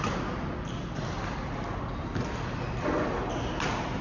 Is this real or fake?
real